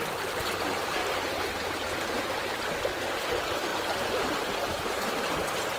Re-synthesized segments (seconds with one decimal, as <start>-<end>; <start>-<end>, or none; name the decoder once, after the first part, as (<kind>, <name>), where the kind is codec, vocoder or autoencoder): 1.0-2.6 (vocoder, BigVGAN v2); 3.7-5.0